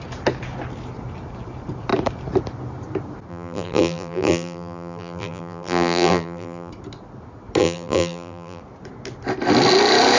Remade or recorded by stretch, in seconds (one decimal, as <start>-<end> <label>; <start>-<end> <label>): 0.0-3.3 recorded; 3.3-6.7 remade; 6.7-7.6 recorded; 7.6-8.6 remade; 8.6-10.2 recorded